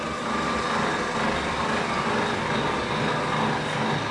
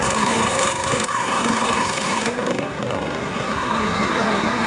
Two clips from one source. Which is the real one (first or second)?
first